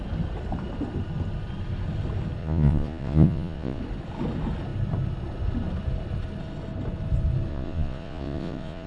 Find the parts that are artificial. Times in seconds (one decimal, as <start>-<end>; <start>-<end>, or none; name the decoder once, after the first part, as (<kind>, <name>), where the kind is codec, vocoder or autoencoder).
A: 2.4-3.8 (vocoder, Vocos); 7.5-8.9